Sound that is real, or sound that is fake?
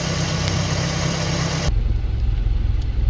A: real